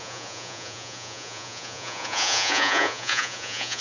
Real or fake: fake